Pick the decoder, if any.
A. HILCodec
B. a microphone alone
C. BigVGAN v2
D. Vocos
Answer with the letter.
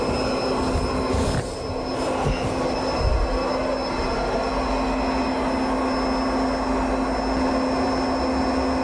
B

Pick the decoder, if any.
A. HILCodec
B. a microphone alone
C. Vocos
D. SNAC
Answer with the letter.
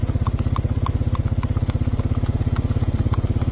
B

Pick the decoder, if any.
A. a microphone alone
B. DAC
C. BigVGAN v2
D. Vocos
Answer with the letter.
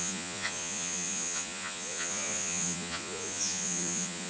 D